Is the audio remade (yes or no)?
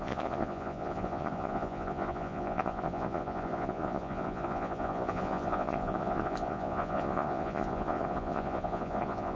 yes